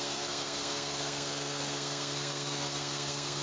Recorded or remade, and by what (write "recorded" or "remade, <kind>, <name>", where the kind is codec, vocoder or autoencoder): remade, codec, SNAC